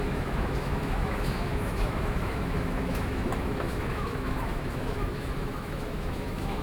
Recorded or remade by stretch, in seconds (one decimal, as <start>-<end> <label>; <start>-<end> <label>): 0.0-6.6 remade